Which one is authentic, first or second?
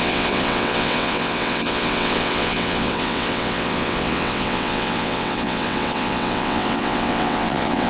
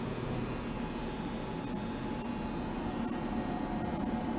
second